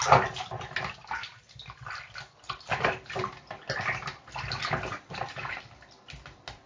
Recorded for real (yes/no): yes